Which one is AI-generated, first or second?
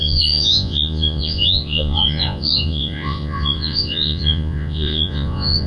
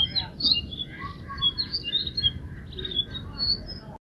first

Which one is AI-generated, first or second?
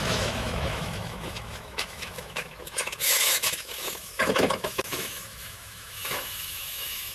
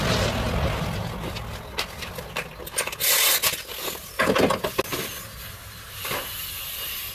first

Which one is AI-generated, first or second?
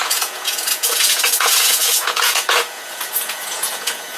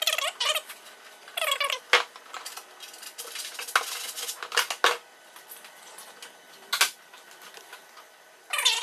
first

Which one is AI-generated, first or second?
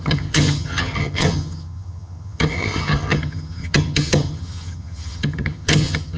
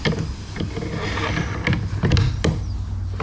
first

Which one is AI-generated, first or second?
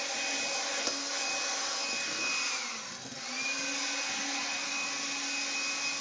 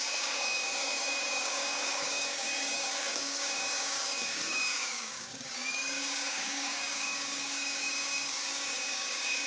second